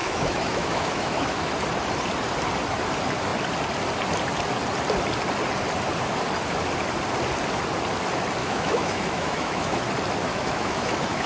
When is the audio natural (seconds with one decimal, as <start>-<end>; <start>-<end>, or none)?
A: 1.5-8.4; 9.8-10.3